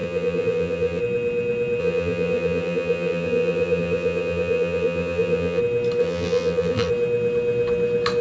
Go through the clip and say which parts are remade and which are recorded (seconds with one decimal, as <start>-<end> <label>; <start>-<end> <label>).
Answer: 0.0-1.0 remade; 1.0-1.8 recorded; 1.8-5.6 remade; 5.6-6.0 recorded; 6.0-6.9 remade; 6.9-8.2 recorded